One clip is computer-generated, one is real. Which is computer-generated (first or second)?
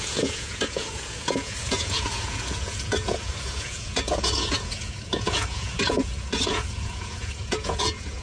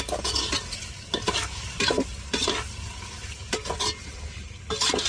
first